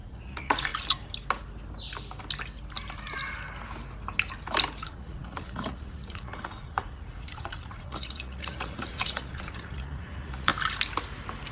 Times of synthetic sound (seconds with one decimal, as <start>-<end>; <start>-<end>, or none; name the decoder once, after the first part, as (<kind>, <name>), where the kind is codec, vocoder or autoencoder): 0.0-0.7 (vocoder, Vocos); 4.8-10.5

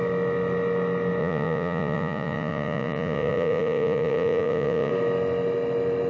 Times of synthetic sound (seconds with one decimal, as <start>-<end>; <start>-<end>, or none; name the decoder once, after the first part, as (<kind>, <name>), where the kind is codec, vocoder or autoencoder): 1.2-4.9 (vocoder, Vocos)

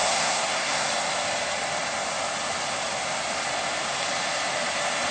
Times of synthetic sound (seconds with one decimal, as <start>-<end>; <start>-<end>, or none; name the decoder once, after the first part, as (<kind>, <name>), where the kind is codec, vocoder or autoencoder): 0.0-0.9 (codec, SNAC)